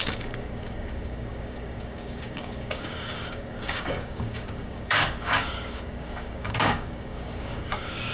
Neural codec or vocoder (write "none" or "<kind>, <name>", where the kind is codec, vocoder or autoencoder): codec, DAC